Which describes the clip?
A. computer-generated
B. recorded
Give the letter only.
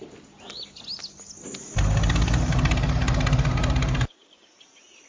B